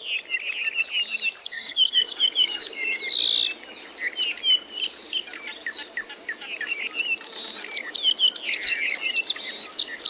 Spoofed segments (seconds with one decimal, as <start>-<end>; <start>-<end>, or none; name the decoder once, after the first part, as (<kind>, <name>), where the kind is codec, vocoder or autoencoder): 1.4-3.0 (codec, DAC)